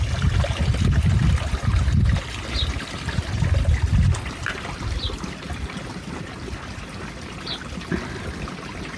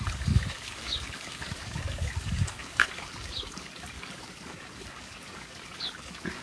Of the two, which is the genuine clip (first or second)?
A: first